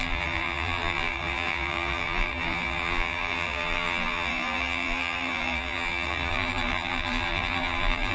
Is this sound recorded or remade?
remade